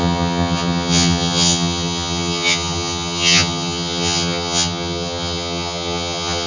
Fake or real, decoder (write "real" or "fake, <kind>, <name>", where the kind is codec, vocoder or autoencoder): fake, vocoder, HiFi-GAN